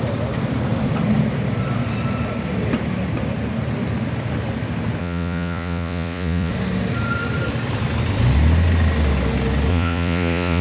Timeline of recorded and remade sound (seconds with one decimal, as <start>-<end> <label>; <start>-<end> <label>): 0.0-5.0 recorded; 5.0-6.5 remade; 6.5-9.7 recorded; 9.7-10.6 remade